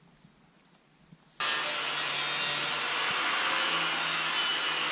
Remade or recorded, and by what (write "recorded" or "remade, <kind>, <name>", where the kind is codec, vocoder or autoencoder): recorded